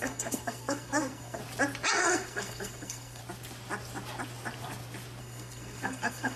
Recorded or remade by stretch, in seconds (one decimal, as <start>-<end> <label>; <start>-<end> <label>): 0.0-1.4 remade; 1.4-1.9 recorded; 1.9-3.2 remade; 3.2-5.2 recorded; 5.2-6.4 remade